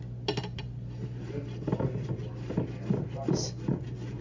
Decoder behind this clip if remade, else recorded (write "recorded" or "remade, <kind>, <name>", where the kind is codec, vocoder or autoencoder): recorded